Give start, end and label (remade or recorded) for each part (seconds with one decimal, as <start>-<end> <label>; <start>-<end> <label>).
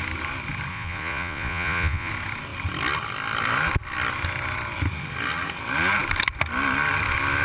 0.0-0.7 recorded; 0.7-2.1 remade; 2.1-7.4 recorded